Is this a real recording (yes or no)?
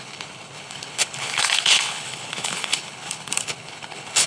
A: no